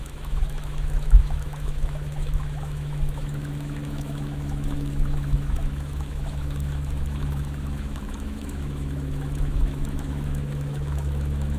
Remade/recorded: remade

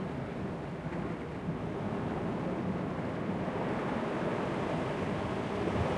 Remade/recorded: recorded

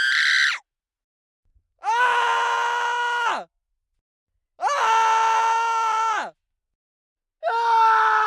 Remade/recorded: recorded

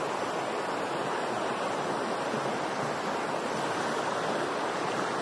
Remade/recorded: recorded